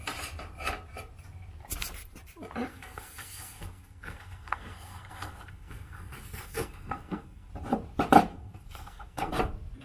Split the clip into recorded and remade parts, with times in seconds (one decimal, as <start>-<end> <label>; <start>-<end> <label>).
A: 0.0-2.7 recorded; 2.7-7.5 remade; 7.5-8.3 recorded; 8.3-9.3 remade; 9.3-9.8 recorded